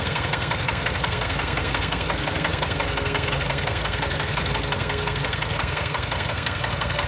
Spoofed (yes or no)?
yes